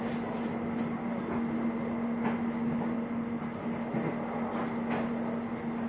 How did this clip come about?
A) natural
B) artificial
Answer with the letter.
A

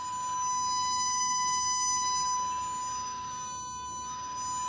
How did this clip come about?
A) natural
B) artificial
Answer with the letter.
B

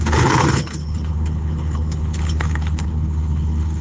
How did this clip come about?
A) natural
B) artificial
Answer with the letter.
B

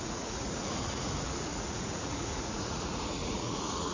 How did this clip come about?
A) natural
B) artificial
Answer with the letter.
B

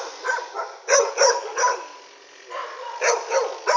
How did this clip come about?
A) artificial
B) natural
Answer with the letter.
B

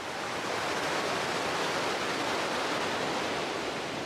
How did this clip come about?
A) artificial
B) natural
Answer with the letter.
B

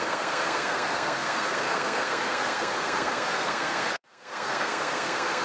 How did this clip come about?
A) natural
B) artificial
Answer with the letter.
B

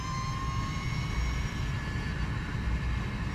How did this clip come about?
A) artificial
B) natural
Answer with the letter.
B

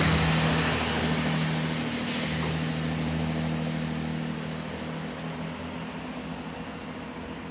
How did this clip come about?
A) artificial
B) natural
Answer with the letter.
B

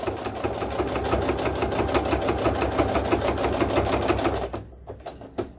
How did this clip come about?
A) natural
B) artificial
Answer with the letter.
A